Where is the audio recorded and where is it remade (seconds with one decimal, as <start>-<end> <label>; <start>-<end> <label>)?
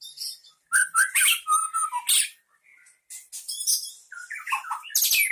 0.0-5.3 recorded